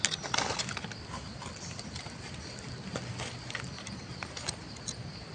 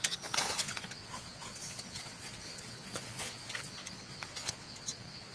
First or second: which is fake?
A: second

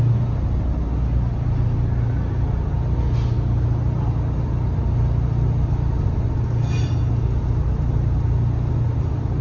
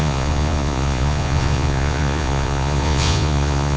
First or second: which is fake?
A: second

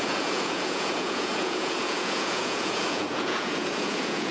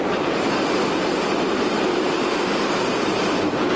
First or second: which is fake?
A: first